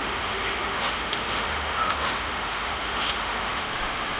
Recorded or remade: remade